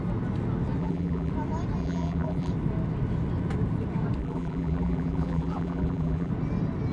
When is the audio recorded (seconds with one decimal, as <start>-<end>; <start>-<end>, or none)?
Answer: 0.0-0.8; 1.3-1.8; 2.5-4.2; 6.3-6.9